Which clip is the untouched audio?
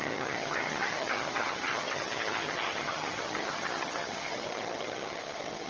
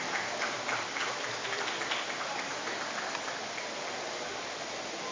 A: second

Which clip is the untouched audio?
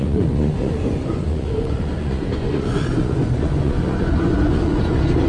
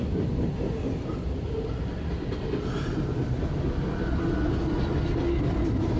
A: second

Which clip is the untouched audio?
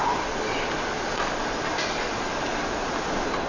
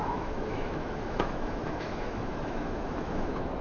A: first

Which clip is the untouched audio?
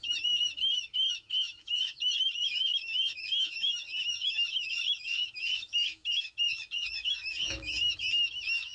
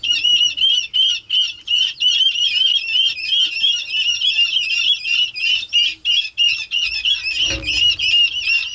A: second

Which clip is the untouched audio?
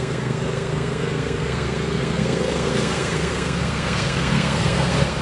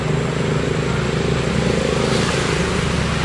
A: second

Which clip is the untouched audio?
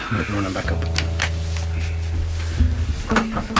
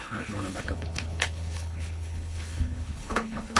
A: first